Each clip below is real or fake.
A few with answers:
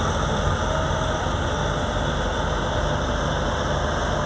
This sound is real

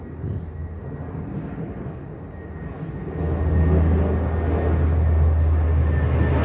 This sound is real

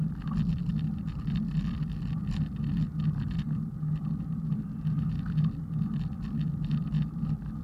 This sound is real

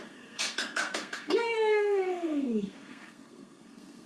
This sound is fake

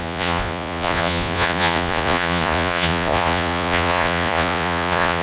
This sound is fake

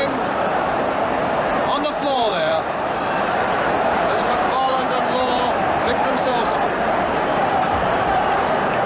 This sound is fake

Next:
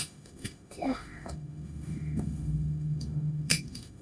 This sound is fake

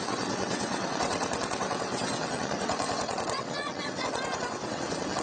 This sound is fake